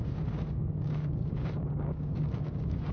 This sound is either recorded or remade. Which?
remade